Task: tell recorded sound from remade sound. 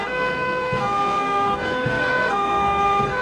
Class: remade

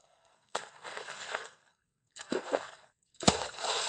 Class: remade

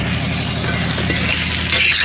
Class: recorded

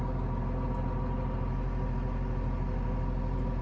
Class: recorded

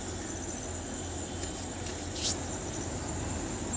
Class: recorded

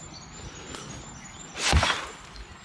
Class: recorded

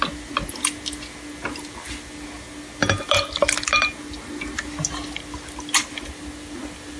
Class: recorded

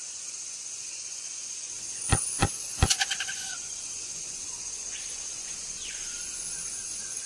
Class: remade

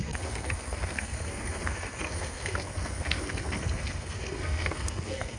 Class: remade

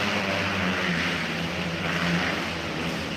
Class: recorded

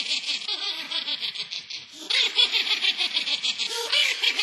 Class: remade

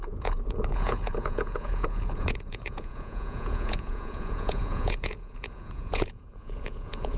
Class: remade